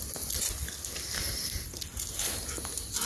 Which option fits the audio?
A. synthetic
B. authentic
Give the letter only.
B